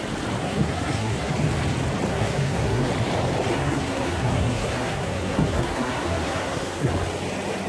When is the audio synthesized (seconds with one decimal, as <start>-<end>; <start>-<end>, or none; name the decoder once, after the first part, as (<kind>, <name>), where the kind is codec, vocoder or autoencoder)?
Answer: 0.4-1.3 (codec, SNAC); 2.1-2.9; 3.5-6.9